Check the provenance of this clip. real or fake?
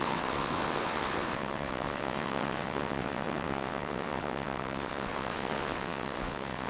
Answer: fake